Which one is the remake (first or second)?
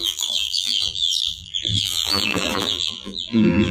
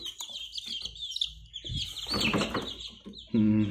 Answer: first